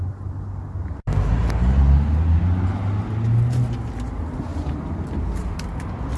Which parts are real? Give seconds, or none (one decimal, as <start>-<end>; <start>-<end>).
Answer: 0.0-4.5; 5.2-6.2